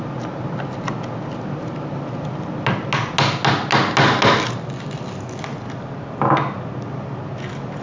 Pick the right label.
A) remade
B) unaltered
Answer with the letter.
B